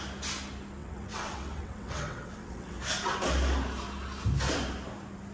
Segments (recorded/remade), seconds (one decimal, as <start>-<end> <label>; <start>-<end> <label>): 0.0-0.8 recorded; 0.8-2.8 remade; 2.8-5.3 recorded